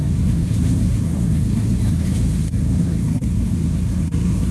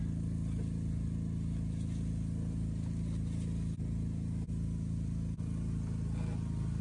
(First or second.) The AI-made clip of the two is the first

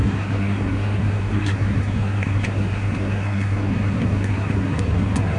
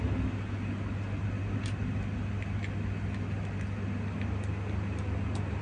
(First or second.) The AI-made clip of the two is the first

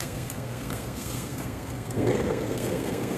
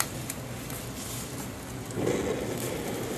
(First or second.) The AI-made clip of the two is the first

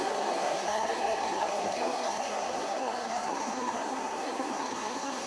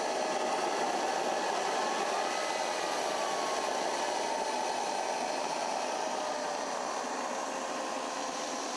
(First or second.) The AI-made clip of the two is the first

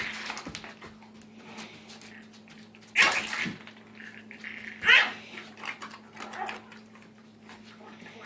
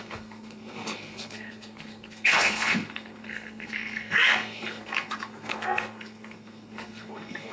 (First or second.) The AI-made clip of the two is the second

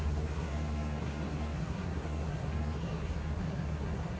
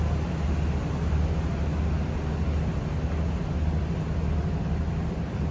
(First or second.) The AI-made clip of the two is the first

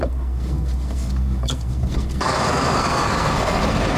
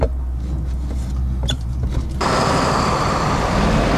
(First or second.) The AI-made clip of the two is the first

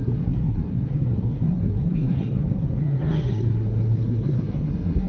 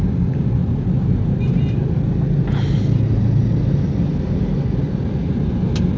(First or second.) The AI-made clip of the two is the first